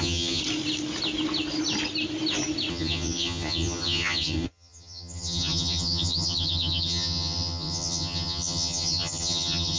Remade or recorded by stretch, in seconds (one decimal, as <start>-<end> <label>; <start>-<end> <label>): 0.0-0.4 remade; 0.4-2.7 recorded; 2.7-9.8 remade